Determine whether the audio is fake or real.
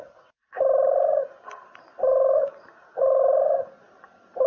real